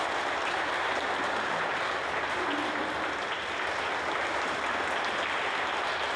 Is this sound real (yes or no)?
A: yes